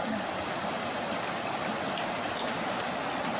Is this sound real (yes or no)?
yes